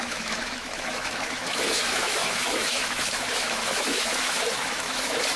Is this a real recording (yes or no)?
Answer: no